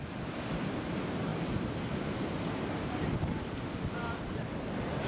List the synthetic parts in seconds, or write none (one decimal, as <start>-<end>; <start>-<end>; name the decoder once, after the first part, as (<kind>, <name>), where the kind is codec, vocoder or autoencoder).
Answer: none